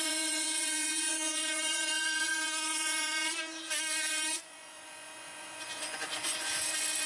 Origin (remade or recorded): remade